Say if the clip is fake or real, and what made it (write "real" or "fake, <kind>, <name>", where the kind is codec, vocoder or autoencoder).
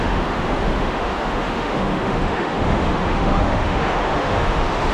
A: fake, autoencoder, DAC-VAE